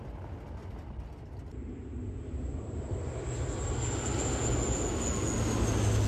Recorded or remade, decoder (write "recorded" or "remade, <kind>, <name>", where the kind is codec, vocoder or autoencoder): recorded